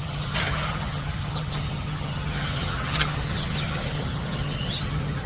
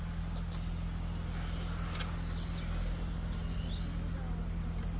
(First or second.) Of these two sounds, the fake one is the first